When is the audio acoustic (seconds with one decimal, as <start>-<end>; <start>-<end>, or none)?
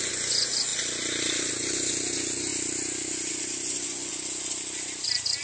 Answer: 0.7-1.4; 2.5-3.3; 4.1-5.4